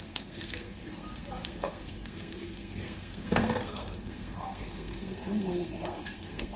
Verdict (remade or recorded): remade